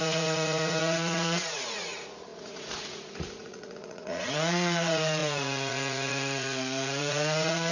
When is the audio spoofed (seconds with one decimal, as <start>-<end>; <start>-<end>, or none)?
0.0-7.7